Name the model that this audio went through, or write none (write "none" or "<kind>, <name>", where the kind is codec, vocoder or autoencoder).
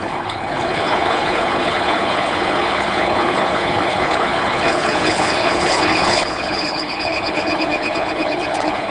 codec, HILCodec